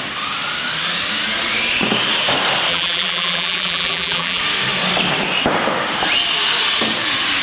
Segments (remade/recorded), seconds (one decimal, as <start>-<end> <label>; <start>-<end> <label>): 0.0-2.7 recorded; 2.7-4.4 remade; 4.4-7.4 recorded